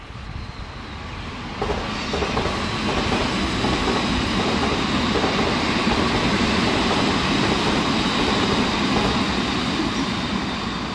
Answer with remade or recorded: recorded